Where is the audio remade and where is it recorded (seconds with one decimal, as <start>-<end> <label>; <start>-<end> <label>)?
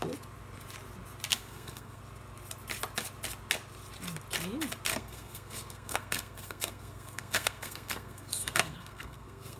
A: 0.0-1.3 recorded; 1.3-2.0 remade; 2.0-4.9 recorded; 4.9-9.6 remade